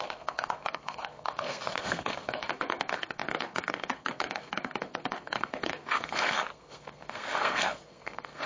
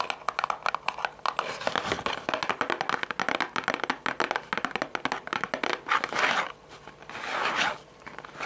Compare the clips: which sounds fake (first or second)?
first